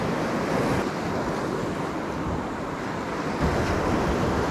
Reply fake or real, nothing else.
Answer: real